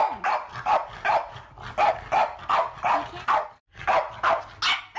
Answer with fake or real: real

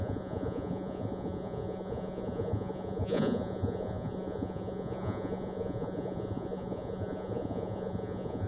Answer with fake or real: fake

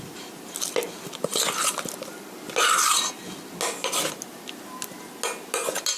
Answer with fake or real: real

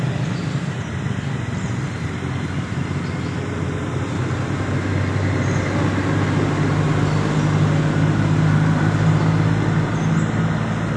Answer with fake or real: real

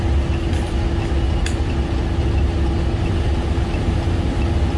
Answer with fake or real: real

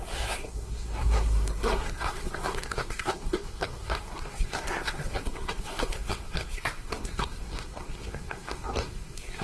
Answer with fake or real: fake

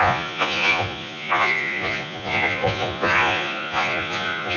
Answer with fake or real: fake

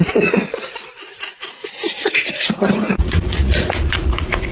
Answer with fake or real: fake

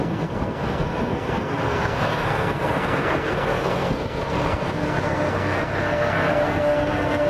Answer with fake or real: fake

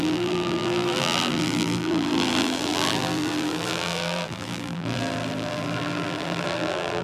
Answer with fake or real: fake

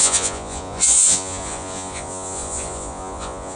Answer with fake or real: fake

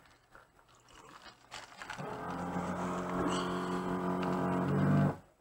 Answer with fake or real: real